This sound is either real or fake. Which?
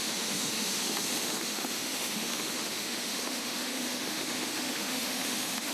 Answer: fake